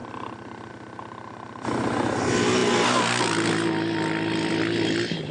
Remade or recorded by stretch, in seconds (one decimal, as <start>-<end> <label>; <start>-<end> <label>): 0.0-5.3 recorded

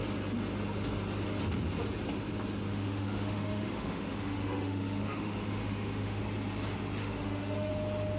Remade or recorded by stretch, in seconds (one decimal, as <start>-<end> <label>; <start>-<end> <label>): 0.0-2.7 recorded; 2.7-6.2 remade; 6.2-7.0 recorded; 7.0-7.7 remade; 7.7-8.2 recorded

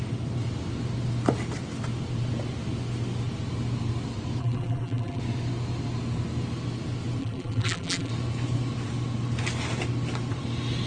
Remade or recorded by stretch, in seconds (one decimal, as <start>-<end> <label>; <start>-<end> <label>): 0.0-4.4 recorded; 4.4-5.2 remade; 5.2-7.2 recorded; 7.2-8.1 remade; 8.1-10.9 recorded

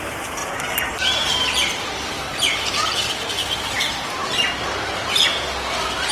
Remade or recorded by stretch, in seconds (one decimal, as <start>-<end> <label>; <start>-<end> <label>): 0.0-0.4 remade; 0.4-1.0 recorded; 1.0-4.2 remade; 4.2-6.1 recorded

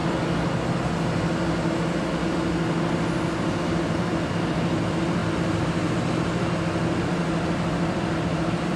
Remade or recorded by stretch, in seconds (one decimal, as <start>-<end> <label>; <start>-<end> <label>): 0.0-3.6 recorded; 3.6-5.2 remade; 5.2-7.0 recorded; 7.0-8.8 remade

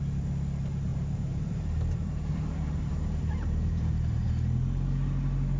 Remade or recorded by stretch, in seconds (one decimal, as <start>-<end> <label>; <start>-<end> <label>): 0.0-0.9 recorded; 0.9-4.3 remade; 4.3-5.6 recorded